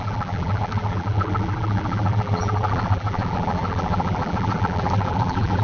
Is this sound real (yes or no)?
no